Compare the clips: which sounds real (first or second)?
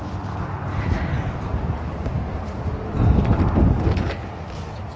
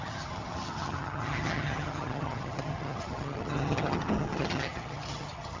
first